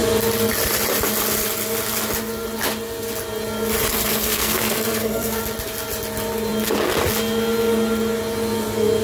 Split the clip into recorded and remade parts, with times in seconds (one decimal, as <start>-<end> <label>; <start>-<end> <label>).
0.0-3.9 recorded; 3.9-5.4 remade; 5.4-9.0 recorded

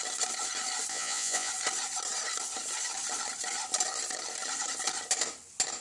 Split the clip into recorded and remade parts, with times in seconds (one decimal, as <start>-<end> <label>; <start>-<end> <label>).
0.0-0.9 recorded; 0.9-1.5 remade; 1.5-5.8 recorded

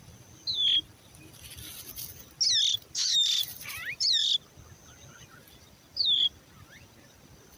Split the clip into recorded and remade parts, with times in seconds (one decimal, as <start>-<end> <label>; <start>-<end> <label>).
0.0-2.7 recorded; 2.7-4.3 remade; 4.3-5.4 recorded; 5.4-6.2 remade; 6.2-7.6 recorded

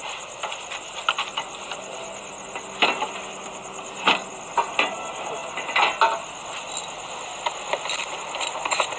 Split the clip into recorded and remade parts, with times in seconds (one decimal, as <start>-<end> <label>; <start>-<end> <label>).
0.0-9.0 recorded

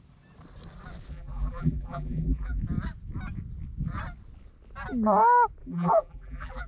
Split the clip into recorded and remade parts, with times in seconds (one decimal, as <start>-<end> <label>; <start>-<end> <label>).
0.0-1.1 recorded; 1.1-2.6 remade; 2.6-5.6 recorded; 5.6-6.7 remade

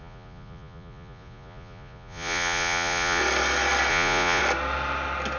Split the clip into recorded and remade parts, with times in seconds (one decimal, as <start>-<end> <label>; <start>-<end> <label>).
0.0-3.2 remade; 3.2-3.9 recorded; 3.9-4.4 remade; 4.4-5.4 recorded